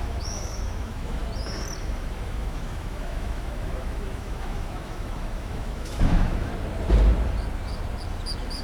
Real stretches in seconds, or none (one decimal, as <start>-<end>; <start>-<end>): 1.2-1.8; 6.5-8.6